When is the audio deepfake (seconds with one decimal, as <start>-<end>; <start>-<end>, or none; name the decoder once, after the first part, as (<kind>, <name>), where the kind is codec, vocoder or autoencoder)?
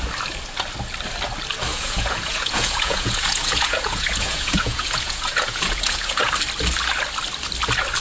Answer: 1.7-6.3 (vocoder, Vocos)